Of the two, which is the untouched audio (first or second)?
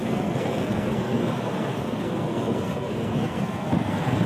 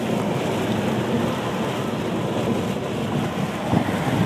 second